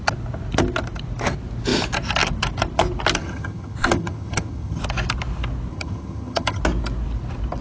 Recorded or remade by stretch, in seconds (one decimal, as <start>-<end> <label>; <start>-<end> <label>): 0.0-3.2 recorded; 3.2-4.8 remade; 4.8-5.7 recorded; 5.7-6.6 remade; 6.6-7.6 recorded